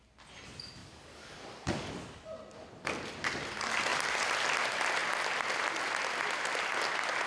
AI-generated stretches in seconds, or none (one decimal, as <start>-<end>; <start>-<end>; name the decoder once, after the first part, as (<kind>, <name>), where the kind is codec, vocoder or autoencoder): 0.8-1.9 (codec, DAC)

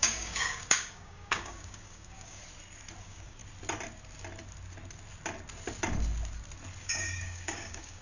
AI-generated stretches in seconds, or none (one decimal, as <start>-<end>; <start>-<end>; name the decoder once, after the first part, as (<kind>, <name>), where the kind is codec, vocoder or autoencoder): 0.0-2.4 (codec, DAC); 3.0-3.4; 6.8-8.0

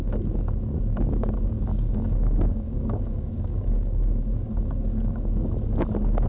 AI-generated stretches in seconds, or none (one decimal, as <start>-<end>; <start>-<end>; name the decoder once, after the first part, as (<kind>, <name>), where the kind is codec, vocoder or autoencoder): 1.7-5.5 (codec, DAC)

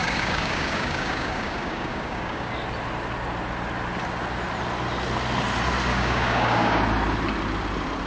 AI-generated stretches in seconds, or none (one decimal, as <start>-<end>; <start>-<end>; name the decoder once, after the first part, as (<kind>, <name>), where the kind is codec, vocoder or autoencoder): 0.0-2.5 (codec, DAC); 5.9-6.8